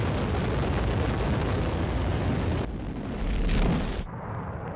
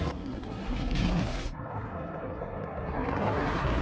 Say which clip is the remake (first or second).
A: second